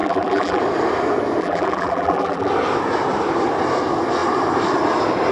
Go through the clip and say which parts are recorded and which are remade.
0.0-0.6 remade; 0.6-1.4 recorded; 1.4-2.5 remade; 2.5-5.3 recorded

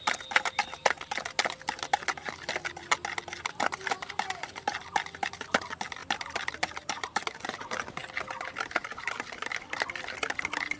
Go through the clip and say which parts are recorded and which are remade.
0.0-6.0 recorded; 6.0-7.6 remade; 7.6-10.8 recorded

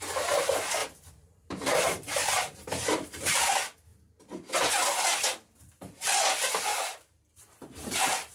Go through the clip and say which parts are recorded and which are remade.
0.0-0.8 recorded; 0.8-3.5 remade; 3.5-6.7 recorded; 6.7-7.4 remade; 7.4-8.3 recorded